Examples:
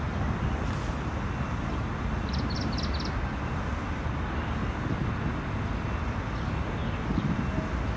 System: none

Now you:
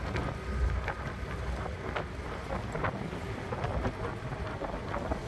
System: none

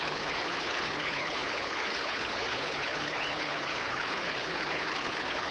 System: codec, HILCodec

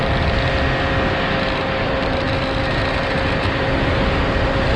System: none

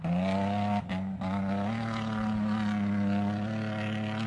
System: none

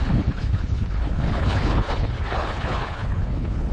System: codec, HILCodec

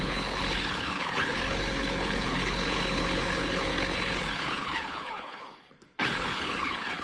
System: codec, HILCodec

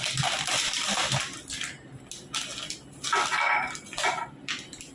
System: none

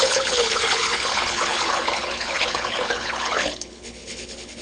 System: codec, HILCodec